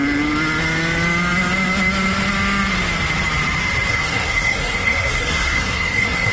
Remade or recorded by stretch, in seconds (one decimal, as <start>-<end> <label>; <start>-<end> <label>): 0.0-3.9 recorded; 3.9-6.3 remade